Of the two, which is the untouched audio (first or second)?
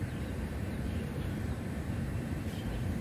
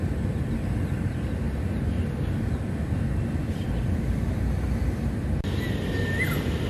second